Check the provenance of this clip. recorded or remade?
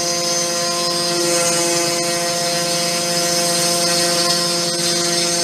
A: recorded